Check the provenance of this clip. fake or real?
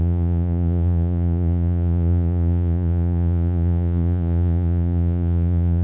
fake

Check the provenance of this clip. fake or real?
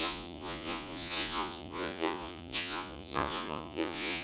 fake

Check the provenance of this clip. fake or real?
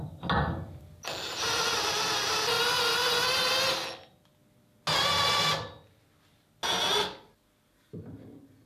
real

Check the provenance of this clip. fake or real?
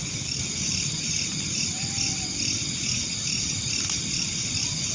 real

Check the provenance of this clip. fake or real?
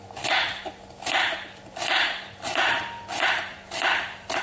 real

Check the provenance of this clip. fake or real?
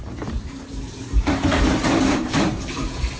fake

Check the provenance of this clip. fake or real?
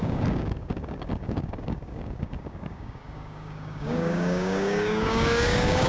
fake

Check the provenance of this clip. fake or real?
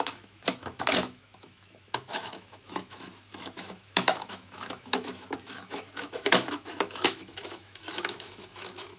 fake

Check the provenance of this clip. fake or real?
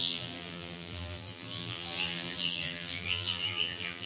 fake